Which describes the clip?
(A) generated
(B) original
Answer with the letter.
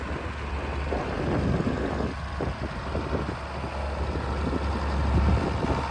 B